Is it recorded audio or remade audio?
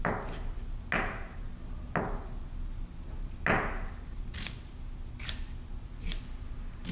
recorded